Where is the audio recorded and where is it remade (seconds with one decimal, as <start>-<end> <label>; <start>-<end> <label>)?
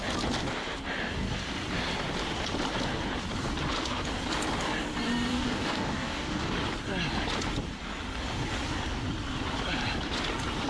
0.0-5.3 recorded; 5.3-6.5 remade; 6.5-10.7 recorded